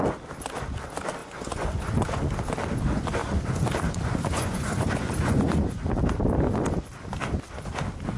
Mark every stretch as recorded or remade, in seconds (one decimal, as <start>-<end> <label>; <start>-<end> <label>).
0.0-1.2 recorded; 1.2-2.3 remade; 2.3-3.2 recorded; 3.2-6.0 remade; 6.0-8.2 recorded